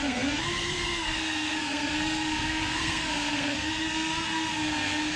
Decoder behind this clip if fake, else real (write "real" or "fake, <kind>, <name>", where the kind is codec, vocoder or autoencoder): fake, codec, SNAC